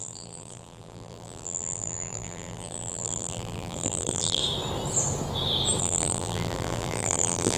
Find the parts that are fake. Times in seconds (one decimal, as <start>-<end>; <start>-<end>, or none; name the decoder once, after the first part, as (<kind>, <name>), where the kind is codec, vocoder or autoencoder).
0.0-4.4 (vocoder, BigVGAN v2); 5.8-7.6